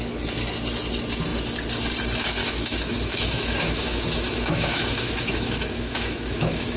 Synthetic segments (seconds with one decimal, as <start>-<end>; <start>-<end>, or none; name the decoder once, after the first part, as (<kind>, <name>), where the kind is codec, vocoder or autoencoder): 2.4-6.8 (autoencoder, DAC-VAE)